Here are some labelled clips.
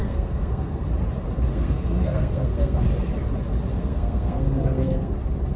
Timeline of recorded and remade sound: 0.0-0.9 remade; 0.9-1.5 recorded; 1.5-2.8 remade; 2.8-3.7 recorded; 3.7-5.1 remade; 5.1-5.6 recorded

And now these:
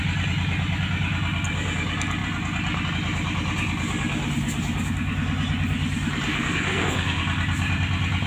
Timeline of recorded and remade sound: 0.0-6.3 recorded; 6.3-7.2 remade; 7.2-8.3 recorded

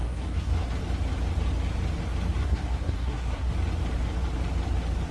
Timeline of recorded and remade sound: 0.0-0.7 remade; 0.7-2.4 recorded; 2.4-3.5 remade; 3.5-5.1 recorded

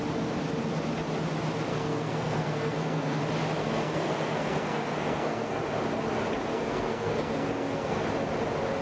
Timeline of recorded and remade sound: 0.0-1.7 recorded; 1.7-3.2 remade; 3.2-3.6 recorded; 3.6-5.6 remade; 5.6-6.5 recorded; 6.5-8.0 remade; 8.0-8.8 recorded

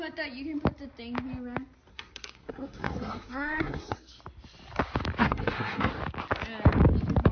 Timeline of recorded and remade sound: 0.0-1.9 recorded; 1.9-4.2 remade; 4.2-5.2 recorded; 5.2-5.9 remade; 5.9-7.3 recorded

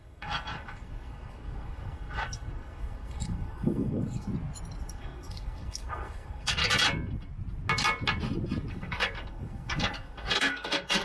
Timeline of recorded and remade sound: 0.0-4.3 remade; 4.3-4.8 recorded; 4.8-6.6 remade; 6.6-8.7 recorded; 8.7-11.0 remade

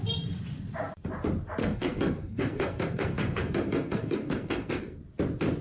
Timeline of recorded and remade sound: 0.0-1.6 recorded; 1.6-5.0 remade; 5.0-5.6 recorded

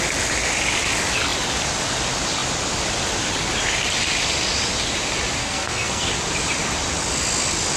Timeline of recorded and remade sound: 0.0-5.4 recorded; 5.4-6.1 remade; 6.1-7.8 recorded